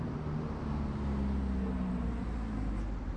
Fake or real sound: real